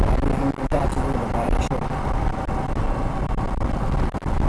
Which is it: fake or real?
real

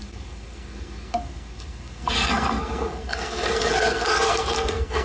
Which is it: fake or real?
fake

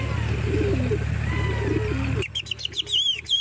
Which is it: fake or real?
real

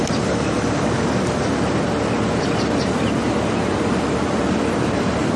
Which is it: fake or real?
fake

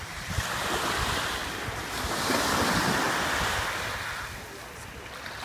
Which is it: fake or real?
real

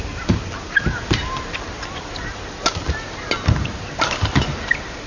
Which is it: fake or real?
real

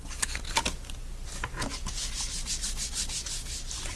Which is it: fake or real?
real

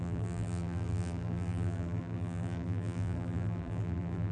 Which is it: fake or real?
fake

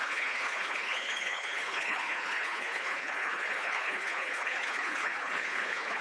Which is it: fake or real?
fake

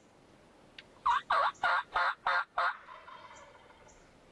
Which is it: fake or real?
real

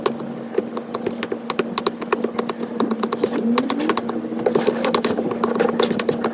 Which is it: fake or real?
real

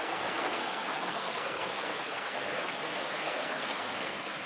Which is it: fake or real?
fake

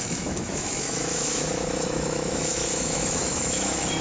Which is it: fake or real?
fake